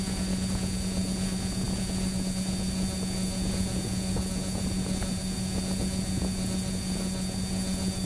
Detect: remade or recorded remade